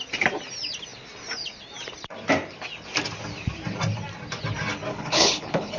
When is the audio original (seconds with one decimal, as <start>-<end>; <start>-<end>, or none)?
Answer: 0.0-4.9

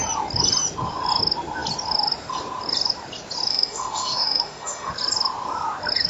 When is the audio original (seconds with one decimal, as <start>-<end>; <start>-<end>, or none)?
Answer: 0.0-3.5; 4.9-6.1

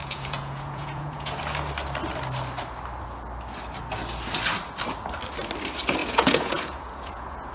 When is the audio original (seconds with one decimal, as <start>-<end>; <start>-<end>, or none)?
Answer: 1.4-6.0

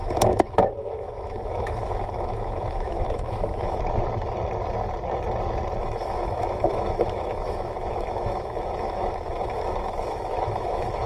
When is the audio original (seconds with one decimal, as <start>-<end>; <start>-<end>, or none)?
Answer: 3.8-5.8

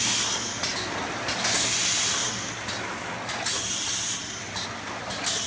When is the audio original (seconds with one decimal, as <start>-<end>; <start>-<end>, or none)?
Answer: 0.0-5.5

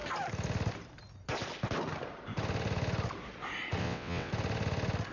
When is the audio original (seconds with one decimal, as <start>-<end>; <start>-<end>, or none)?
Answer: 0.0-3.8; 4.3-5.1

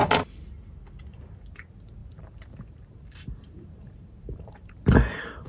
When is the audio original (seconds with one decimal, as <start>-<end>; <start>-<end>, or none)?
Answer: 0.0-2.0

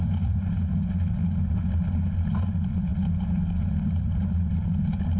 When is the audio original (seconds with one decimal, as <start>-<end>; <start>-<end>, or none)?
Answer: 0.0-5.2